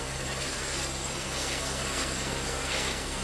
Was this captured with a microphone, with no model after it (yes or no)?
no